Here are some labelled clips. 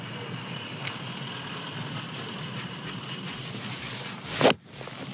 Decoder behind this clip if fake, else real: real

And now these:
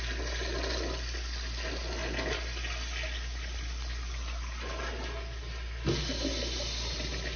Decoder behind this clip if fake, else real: real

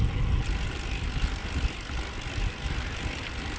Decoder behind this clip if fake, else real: real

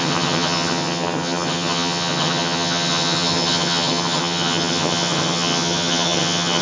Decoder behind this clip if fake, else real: fake, vocoder, HiFi-GAN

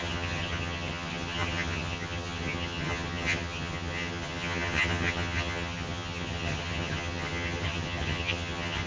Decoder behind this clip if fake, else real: fake, vocoder, HiFi-GAN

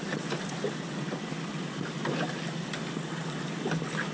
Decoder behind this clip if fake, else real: real